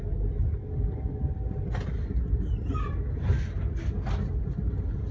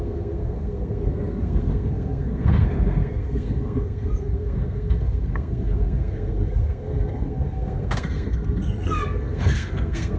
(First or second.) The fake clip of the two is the second